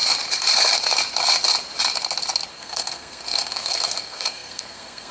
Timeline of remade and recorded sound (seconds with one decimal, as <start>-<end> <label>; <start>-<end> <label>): 0.0-2.5 recorded; 2.5-5.1 remade